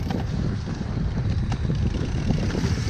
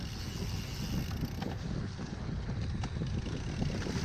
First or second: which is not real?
first